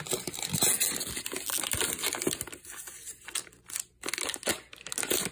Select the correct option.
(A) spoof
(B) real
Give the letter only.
B